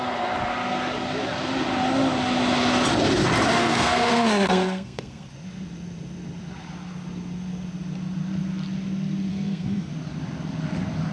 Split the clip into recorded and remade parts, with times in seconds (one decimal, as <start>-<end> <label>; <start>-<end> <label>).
0.0-3.6 recorded; 3.6-5.3 remade; 5.3-9.3 recorded; 9.3-9.9 remade; 9.9-11.1 recorded